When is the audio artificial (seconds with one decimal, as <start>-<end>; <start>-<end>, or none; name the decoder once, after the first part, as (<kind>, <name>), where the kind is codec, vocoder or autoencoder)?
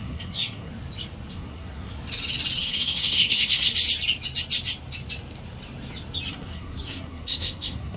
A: 0.0-0.7 (codec, SNAC); 1.3-1.9; 2.6-3.7; 6.3-8.0